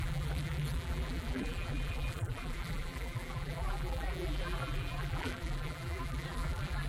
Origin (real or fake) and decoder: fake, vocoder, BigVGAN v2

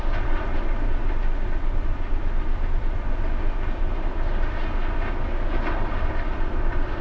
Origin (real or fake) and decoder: real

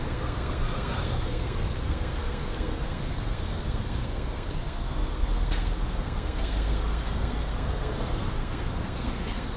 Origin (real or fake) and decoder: fake, codec, SNAC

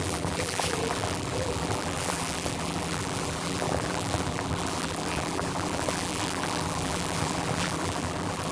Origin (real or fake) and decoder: fake, vocoder, BigVGAN v2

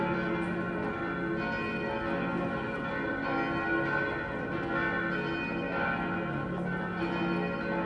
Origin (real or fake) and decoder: real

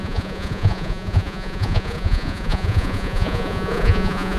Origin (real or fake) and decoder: fake, vocoder, Vocos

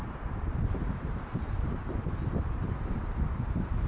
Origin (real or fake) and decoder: real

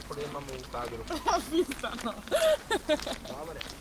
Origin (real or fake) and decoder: real